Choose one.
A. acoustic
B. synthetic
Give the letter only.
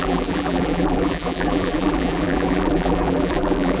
B